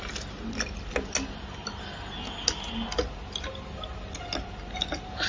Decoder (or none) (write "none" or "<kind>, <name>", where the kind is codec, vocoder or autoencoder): none